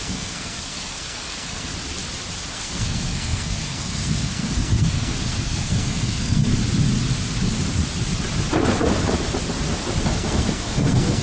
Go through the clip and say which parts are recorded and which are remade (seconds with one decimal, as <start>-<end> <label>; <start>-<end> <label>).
0.0-1.7 remade; 1.7-2.5 recorded; 2.5-6.5 remade; 6.5-10.0 recorded; 10.0-11.2 remade